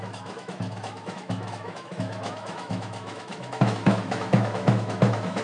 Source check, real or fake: fake